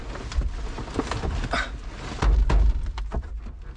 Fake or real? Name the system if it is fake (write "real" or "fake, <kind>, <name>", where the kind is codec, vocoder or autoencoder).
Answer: real